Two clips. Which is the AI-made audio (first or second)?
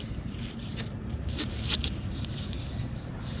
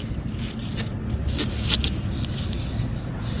first